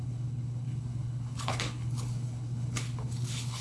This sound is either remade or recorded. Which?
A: remade